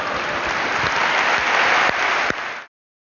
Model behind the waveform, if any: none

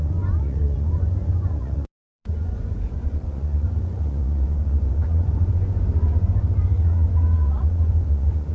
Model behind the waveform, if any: vocoder, Vocos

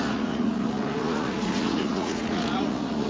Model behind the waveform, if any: vocoder, Vocos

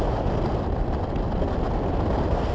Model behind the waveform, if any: none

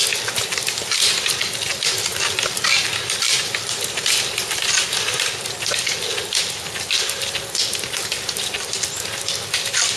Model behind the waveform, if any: none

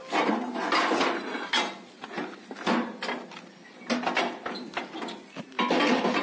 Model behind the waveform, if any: none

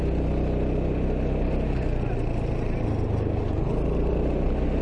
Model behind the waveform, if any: none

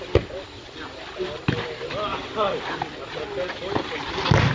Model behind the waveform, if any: none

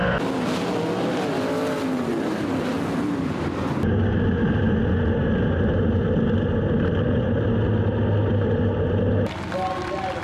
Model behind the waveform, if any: none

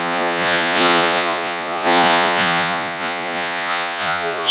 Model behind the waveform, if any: vocoder, Vocos